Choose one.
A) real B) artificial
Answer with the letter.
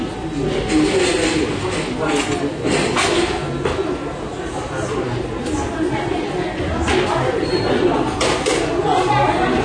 A